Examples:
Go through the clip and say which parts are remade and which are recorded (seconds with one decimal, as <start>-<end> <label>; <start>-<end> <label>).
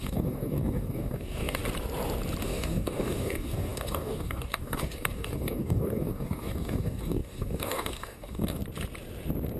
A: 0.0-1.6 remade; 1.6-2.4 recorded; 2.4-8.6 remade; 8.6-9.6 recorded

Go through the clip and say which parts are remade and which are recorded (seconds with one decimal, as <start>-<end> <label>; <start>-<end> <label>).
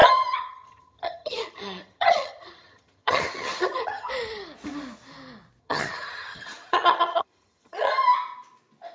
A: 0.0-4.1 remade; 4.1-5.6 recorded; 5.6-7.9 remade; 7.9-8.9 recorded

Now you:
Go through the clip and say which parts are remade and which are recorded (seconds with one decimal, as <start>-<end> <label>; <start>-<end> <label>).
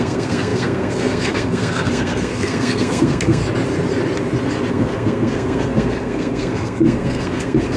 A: 0.0-3.4 remade; 3.4-4.7 recorded; 4.7-7.8 remade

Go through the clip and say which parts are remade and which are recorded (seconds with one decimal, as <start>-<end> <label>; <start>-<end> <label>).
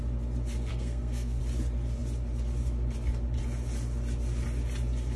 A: 0.0-0.7 recorded; 0.7-1.4 remade; 1.4-5.2 recorded